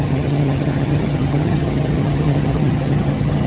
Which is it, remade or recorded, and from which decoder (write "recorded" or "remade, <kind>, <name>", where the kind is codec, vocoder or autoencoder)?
remade, vocoder, HiFi-GAN